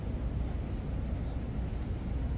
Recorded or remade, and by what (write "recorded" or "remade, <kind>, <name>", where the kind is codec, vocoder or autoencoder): recorded